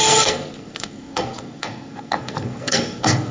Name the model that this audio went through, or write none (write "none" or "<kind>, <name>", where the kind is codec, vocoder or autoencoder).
codec, SNAC